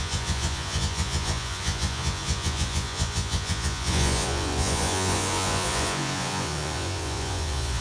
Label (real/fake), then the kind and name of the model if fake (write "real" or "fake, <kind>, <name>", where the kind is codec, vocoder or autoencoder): fake, vocoder, Vocos